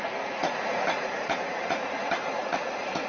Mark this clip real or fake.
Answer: fake